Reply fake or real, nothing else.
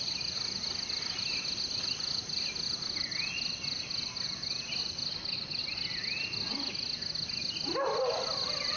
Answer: real